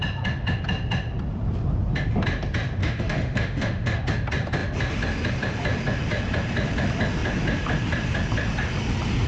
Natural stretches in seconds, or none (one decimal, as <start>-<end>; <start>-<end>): 0.0-2.8; 4.0-9.3